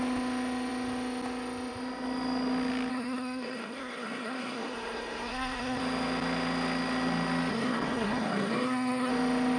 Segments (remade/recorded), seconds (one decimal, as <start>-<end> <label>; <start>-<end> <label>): 0.0-2.9 recorded; 2.9-5.8 remade; 5.8-7.5 recorded; 7.5-9.1 remade; 9.1-9.6 recorded